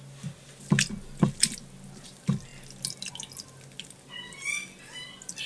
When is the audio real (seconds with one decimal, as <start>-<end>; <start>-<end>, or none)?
0.0-5.5